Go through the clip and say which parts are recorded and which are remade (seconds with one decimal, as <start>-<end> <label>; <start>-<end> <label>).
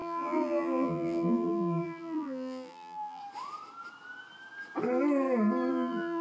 0.0-3.2 remade; 3.2-5.7 recorded; 5.7-6.2 remade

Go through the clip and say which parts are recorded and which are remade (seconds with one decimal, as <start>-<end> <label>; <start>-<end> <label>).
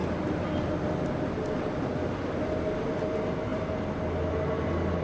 0.0-5.0 recorded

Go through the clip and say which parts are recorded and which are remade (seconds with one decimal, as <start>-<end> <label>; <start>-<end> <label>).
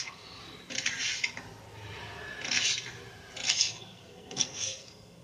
0.0-0.4 remade; 0.4-3.5 recorded; 3.5-5.2 remade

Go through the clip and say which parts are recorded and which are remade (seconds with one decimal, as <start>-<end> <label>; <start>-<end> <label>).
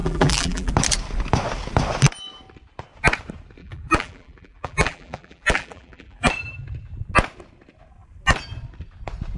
0.0-0.7 remade; 0.7-3.6 recorded; 3.6-6.3 remade; 6.3-9.4 recorded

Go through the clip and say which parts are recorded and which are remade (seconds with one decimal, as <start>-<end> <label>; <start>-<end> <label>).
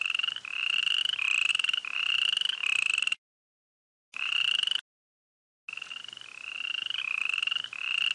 0.0-8.1 recorded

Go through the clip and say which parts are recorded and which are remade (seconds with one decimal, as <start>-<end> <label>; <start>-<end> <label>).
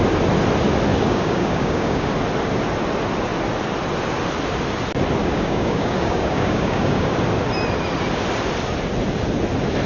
0.0-0.9 recorded; 0.9-2.1 remade; 2.1-5.2 recorded; 5.2-7.1 remade; 7.1-9.9 recorded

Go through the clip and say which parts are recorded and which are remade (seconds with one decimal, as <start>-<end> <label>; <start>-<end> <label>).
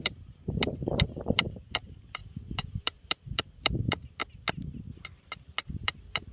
0.0-4.2 remade; 4.2-5.7 recorded; 5.7-6.3 remade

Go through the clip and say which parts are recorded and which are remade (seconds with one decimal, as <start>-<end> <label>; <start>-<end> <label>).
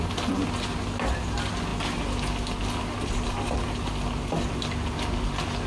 0.0-5.7 recorded